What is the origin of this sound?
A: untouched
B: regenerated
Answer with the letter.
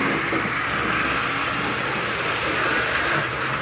A